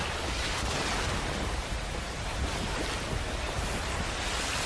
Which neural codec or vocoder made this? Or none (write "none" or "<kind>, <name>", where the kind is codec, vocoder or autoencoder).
none